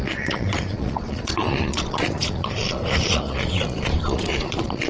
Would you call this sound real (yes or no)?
no